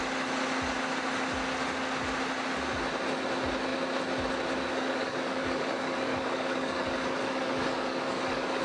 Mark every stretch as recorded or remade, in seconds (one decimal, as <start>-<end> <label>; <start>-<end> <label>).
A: 0.0-4.7 recorded; 4.7-8.6 remade